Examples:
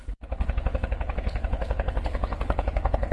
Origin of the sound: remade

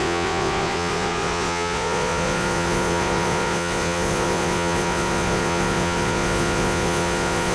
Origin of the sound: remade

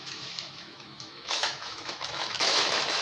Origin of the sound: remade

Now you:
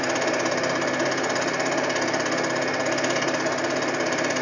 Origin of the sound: recorded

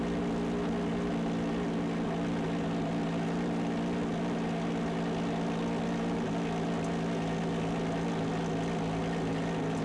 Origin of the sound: recorded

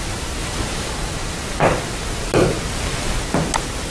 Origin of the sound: recorded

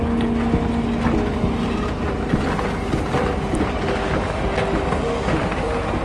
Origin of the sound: recorded